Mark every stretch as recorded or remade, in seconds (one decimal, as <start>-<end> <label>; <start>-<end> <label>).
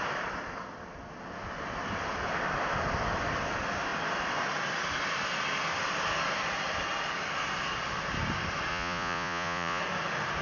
0.0-8.7 recorded; 8.7-9.8 remade; 9.8-10.4 recorded